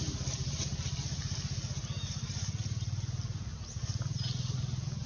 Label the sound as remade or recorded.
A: recorded